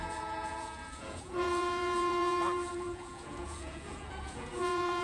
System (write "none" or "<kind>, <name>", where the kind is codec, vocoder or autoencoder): vocoder, Vocos